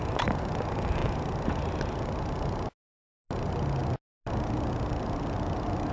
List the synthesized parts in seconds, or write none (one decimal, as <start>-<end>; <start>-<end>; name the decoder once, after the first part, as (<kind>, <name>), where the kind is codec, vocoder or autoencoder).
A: none